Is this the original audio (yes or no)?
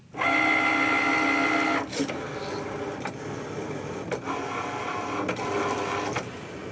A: yes